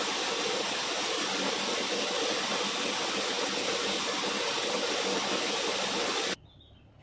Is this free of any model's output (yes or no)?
yes